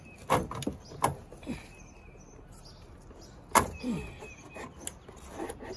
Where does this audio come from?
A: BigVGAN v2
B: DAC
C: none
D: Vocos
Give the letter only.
C